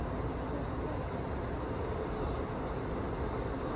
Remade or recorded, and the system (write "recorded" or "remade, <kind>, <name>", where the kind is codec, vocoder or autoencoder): recorded